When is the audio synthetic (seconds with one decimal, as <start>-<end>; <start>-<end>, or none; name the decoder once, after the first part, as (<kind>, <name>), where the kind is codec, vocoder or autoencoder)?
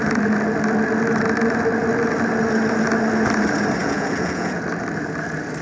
3.8-4.6 (vocoder, Vocos)